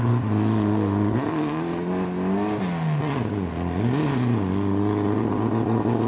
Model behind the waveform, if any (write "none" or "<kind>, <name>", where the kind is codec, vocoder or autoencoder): none